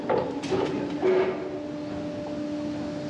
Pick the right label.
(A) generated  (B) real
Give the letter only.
B